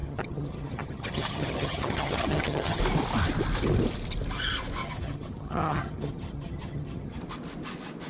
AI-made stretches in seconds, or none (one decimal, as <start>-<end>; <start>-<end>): 0.0-2.8; 4.8-7.2